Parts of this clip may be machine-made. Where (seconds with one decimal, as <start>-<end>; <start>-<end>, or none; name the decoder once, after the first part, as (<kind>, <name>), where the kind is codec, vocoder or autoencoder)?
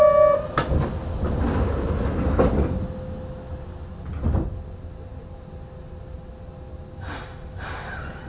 none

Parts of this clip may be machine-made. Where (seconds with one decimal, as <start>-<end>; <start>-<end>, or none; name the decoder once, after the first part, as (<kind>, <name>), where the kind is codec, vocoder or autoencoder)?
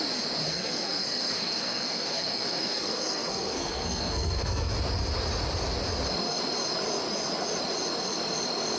0.5-4.7 (codec, SNAC)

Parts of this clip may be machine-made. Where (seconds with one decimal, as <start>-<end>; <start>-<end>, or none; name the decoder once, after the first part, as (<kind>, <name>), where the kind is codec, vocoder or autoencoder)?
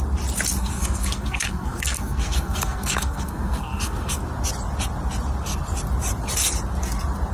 0.6-4.2 (codec, SNAC)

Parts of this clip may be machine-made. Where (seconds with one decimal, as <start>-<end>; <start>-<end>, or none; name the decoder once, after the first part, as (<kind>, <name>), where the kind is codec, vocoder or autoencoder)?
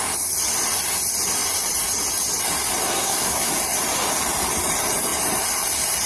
2.8-3.5 (codec, SNAC)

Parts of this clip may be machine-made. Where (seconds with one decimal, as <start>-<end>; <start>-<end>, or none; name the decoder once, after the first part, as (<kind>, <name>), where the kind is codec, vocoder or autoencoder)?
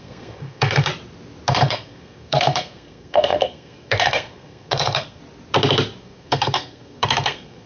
0.0-0.9 (codec, SNAC); 1.5-5.2; 6.0-7.7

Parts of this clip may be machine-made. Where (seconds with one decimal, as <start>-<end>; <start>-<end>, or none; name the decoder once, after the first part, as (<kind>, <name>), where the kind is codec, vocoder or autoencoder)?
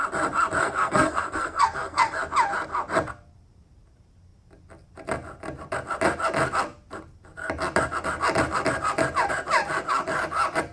0.6-2.2 (codec, SNAC)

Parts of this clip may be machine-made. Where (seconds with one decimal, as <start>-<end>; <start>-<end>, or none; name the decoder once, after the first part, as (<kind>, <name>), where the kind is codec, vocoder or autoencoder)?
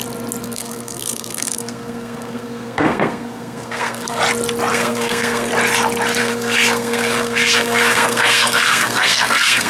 0.4-4.2 (codec, SNAC); 4.7-5.5; 6.2-9.7